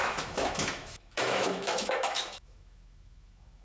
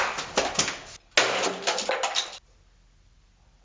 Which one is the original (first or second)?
second